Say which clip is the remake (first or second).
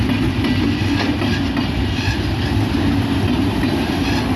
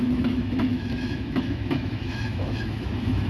second